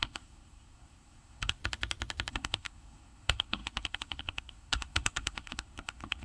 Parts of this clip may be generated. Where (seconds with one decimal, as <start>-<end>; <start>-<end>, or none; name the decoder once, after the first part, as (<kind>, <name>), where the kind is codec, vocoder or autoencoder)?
0.0-1.6 (codec, SNAC); 2.3-6.2